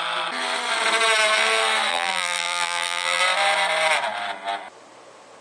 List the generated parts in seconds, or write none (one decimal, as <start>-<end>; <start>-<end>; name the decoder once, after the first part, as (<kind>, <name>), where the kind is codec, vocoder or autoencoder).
1.9-3.2 (vocoder, BigVGAN v2)